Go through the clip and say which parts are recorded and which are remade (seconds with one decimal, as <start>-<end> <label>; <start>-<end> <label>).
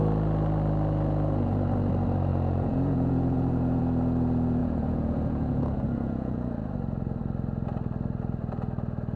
0.0-2.3 recorded; 2.3-3.8 remade; 3.8-4.6 recorded; 4.6-6.5 remade; 6.5-9.2 recorded